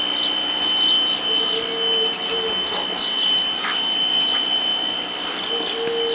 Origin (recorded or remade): recorded